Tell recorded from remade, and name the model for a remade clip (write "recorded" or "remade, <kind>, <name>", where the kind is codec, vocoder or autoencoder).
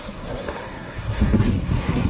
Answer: remade, codec, SNAC